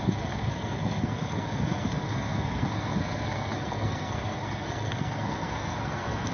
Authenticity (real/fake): fake